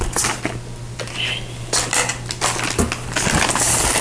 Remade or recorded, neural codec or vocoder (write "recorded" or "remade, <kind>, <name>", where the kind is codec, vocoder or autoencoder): recorded